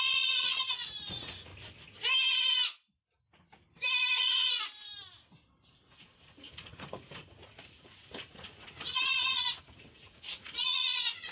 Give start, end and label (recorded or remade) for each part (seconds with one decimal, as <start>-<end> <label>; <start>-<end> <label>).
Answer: 0.0-1.5 remade; 1.5-5.7 recorded; 5.7-11.3 remade